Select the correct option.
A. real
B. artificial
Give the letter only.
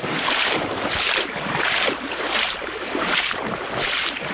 B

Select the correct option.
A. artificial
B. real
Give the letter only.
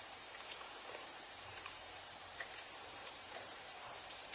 A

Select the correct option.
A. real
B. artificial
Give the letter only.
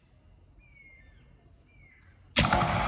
A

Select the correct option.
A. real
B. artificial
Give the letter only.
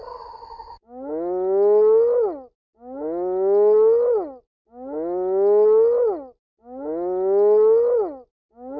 A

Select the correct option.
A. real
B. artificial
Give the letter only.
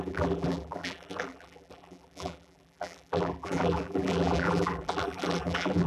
B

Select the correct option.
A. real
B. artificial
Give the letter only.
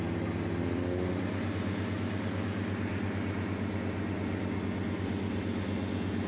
A